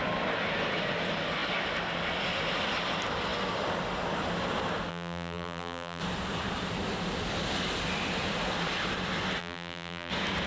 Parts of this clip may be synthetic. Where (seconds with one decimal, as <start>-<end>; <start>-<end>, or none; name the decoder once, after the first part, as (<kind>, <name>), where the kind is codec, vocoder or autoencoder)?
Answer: 4.9-6.0 (vocoder, BigVGAN v2); 9.4-10.1